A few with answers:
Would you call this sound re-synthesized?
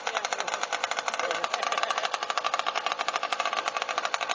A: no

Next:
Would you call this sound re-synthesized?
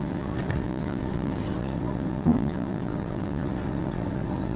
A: yes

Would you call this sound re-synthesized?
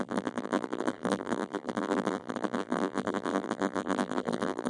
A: yes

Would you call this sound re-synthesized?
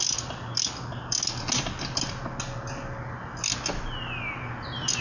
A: no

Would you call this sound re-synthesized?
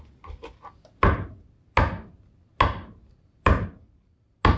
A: no